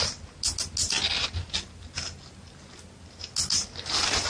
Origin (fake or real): real